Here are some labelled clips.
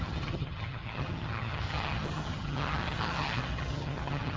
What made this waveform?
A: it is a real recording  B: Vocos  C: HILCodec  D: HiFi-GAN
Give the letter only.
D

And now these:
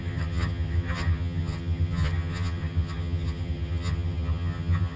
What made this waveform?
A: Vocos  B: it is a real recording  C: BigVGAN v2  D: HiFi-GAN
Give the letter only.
D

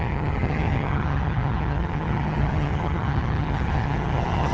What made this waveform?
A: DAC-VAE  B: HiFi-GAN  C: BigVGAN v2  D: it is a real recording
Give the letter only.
B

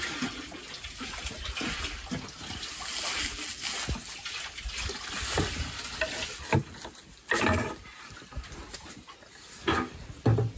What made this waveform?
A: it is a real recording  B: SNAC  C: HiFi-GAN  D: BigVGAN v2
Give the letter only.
A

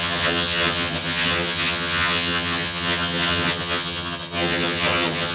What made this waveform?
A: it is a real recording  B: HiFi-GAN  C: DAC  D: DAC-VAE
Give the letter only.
B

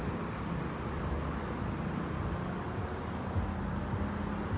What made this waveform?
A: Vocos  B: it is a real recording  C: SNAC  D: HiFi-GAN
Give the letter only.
B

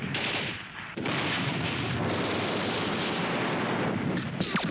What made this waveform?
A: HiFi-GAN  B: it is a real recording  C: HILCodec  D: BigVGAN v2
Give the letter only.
B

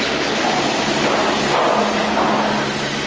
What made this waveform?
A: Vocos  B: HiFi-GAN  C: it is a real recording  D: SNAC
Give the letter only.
C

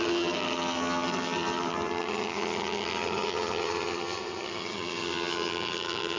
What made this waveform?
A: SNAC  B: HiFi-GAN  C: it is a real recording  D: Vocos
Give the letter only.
B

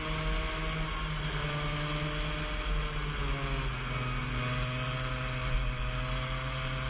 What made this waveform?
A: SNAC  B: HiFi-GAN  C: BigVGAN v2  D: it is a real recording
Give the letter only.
D